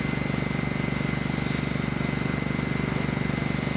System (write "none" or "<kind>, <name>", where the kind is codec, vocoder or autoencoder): none